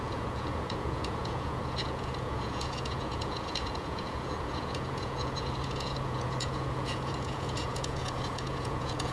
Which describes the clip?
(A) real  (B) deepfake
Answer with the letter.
B